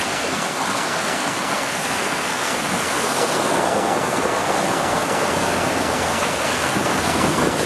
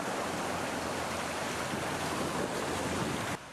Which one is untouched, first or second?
second